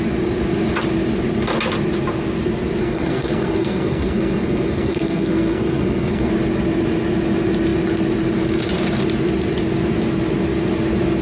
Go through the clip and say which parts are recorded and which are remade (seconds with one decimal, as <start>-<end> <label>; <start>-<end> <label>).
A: 0.0-2.8 recorded; 2.8-6.3 remade; 6.3-11.2 recorded